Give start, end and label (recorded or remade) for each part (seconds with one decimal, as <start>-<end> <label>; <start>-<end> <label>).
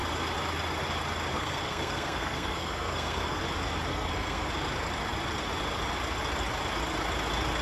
0.0-1.3 recorded; 1.3-3.4 remade; 3.4-3.9 recorded; 3.9-4.5 remade; 4.5-7.6 recorded